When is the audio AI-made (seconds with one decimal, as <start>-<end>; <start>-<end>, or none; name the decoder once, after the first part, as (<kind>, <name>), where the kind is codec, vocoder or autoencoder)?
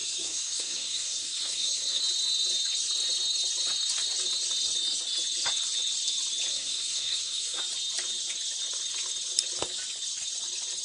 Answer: 0.0-2.0 (codec, SNAC); 6.5-7.6